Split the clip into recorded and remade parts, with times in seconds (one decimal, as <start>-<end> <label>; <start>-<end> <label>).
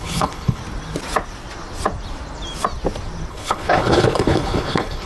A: 0.0-0.6 remade; 0.6-3.3 recorded; 3.3-5.1 remade